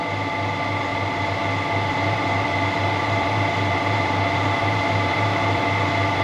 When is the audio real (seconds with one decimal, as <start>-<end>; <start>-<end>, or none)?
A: 0.0-0.9; 1.4-1.9; 5.6-6.2